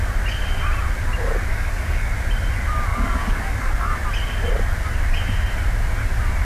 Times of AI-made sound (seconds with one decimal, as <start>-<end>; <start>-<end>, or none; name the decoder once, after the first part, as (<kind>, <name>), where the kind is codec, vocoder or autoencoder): 1.5-2.1 (codec, DAC); 2.9-3.7